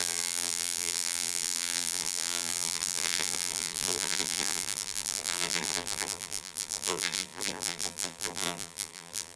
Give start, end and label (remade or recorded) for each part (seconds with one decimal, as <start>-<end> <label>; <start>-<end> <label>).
0.0-9.4 remade